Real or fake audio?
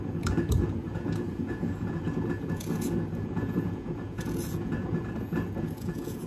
fake